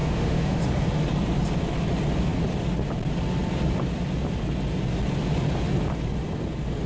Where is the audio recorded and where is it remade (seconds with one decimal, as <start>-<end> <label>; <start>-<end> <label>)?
0.0-0.6 remade; 0.6-6.9 recorded